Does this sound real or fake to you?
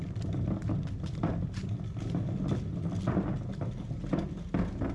real